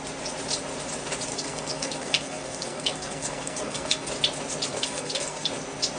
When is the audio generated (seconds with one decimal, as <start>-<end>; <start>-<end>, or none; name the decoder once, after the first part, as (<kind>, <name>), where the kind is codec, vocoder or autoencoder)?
1.3-4.1 (codec, SNAC); 4.7-5.5